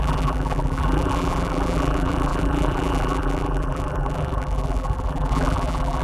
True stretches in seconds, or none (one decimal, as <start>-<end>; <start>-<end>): none